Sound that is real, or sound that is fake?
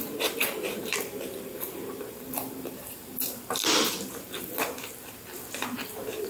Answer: fake